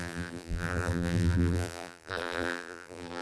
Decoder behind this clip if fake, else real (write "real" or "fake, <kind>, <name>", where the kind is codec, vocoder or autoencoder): fake, vocoder, BigVGAN v2